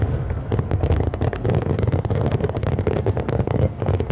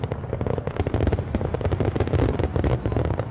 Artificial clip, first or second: first